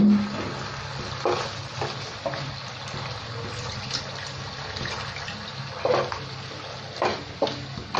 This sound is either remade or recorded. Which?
recorded